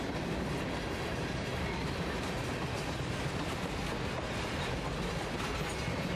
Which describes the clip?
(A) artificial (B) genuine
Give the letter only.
B